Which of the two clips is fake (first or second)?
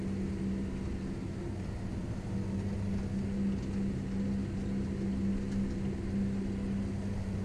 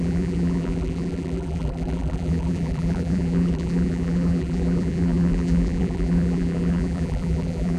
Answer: second